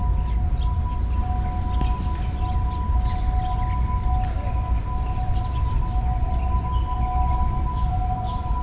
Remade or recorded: recorded